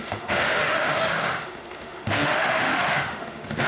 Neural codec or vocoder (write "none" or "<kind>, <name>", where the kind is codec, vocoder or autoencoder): autoencoder, DAC-VAE